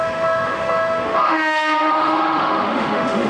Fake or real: fake